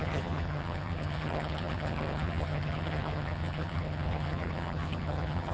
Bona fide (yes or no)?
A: no